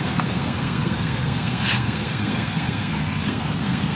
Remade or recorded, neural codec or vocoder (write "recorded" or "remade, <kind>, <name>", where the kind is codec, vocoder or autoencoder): remade, codec, SNAC